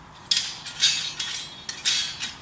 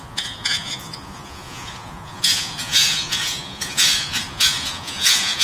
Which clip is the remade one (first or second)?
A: second